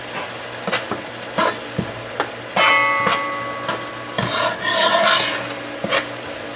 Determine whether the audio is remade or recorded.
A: recorded